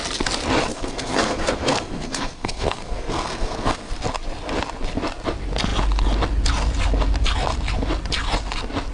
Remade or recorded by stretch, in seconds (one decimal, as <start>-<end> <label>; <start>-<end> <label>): 0.0-0.7 recorded; 0.7-3.9 remade; 3.9-8.9 recorded